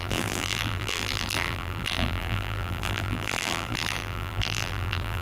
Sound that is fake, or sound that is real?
fake